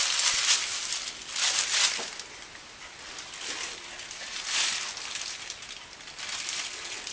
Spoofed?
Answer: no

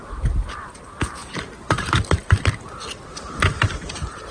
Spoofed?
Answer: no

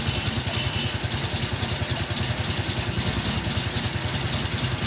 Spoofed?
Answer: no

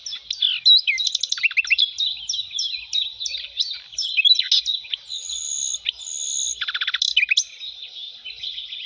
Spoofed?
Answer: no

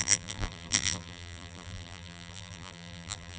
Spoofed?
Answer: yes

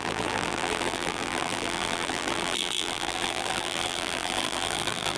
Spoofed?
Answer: yes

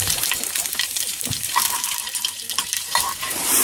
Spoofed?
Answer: yes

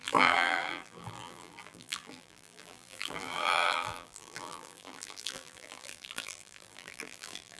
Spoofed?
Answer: yes